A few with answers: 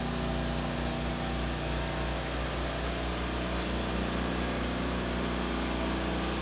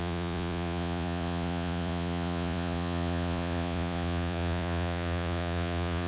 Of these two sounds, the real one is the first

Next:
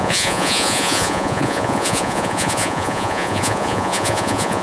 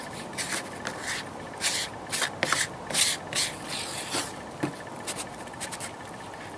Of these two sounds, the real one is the second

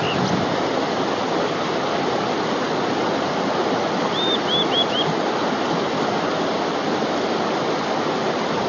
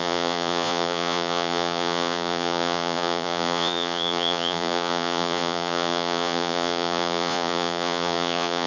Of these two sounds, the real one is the first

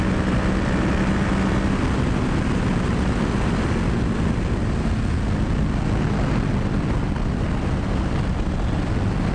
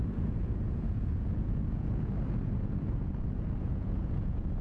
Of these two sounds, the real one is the first